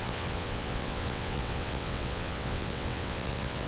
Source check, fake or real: fake